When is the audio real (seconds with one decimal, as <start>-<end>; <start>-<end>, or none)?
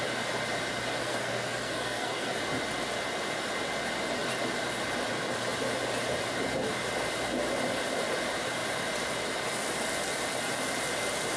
0.0-1.0; 2.4-11.4